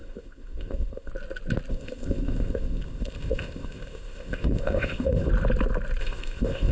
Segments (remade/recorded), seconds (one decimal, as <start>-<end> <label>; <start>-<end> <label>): 0.0-1.1 remade; 1.1-1.7 recorded; 1.7-5.3 remade; 5.3-6.0 recorded; 6.0-6.7 remade